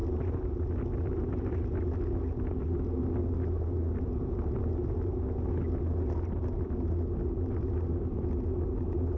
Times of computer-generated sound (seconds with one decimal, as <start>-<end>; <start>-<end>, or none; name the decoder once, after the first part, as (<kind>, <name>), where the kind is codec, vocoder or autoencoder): none